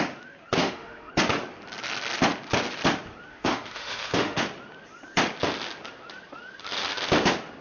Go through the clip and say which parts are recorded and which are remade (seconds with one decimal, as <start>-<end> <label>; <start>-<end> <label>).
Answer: 0.0-0.6 recorded; 0.6-1.1 remade; 1.1-3.3 recorded; 3.3-4.4 remade; 4.4-7.6 recorded